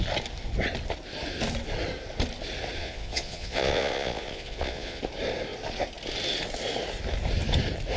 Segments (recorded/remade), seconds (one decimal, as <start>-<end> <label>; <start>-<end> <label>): 0.0-2.8 recorded; 2.8-5.0 remade; 5.0-8.0 recorded